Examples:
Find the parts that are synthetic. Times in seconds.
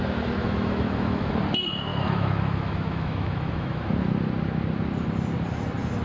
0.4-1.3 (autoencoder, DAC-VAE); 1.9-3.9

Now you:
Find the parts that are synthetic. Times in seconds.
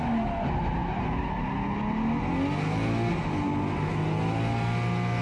none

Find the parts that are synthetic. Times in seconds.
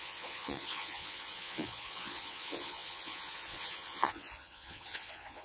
0.0-5.4 (vocoder, Vocos)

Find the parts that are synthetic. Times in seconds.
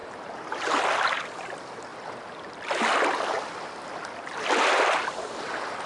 0.0-0.8 (vocoder, BigVGAN v2)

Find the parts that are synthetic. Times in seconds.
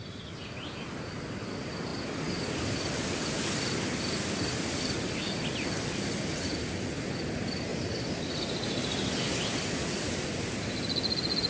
none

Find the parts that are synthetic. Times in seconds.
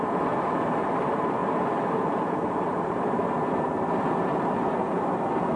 0.0-3.2 (vocoder, BigVGAN v2); 4.2-5.6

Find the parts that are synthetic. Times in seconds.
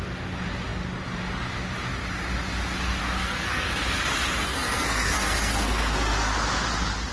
3.2-4.0 (codec, SNAC); 4.4-6.3